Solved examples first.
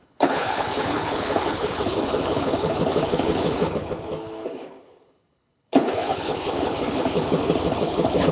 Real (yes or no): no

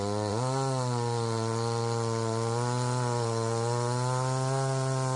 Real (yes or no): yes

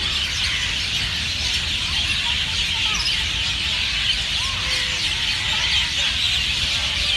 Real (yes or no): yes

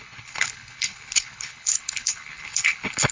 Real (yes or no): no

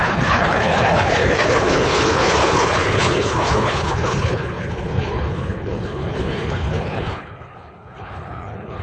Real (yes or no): no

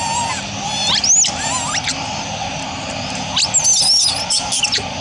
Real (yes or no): yes